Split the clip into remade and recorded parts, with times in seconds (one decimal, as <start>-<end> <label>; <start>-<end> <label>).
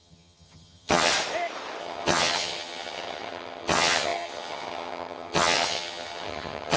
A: 0.0-1.1 remade; 1.1-1.8 recorded; 1.8-6.8 remade